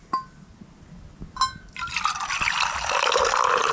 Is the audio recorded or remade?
recorded